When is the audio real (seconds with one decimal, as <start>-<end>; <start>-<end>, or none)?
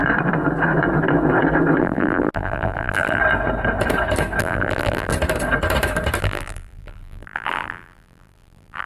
0.0-1.8; 3.2-4.4; 5.1-6.2